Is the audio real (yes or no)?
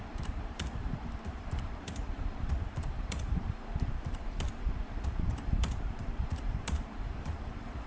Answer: no